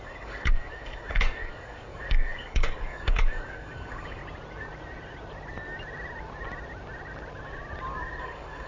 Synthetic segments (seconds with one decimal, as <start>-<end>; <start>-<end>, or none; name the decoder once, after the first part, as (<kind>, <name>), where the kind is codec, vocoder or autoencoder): 0.0-4.2 (codec, DAC); 8.2-8.7